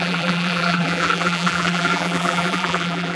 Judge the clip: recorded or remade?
remade